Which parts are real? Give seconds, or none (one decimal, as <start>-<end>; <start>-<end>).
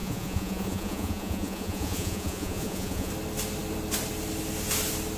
3.1-5.2